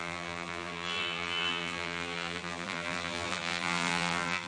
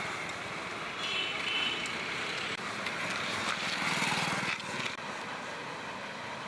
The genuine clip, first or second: second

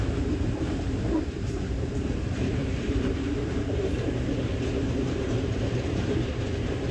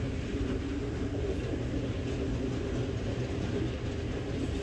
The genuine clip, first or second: second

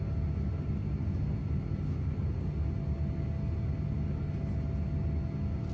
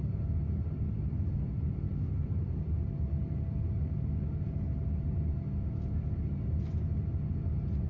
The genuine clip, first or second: first